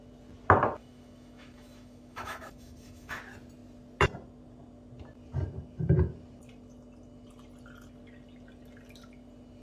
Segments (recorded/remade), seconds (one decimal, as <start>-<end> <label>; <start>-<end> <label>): 0.0-0.8 recorded; 0.8-3.2 remade; 3.2-9.6 recorded

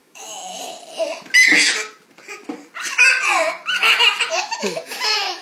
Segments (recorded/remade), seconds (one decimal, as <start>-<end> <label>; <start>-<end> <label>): 0.0-0.6 remade; 0.6-4.4 recorded; 4.4-5.4 remade

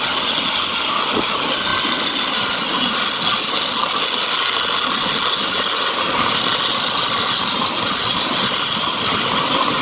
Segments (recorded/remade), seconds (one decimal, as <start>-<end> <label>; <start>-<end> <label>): 0.0-9.8 recorded

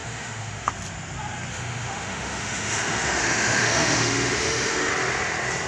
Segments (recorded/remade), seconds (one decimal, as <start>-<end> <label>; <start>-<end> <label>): 0.0-0.7 remade; 0.7-1.5 recorded; 1.5-4.9 remade; 4.9-5.7 recorded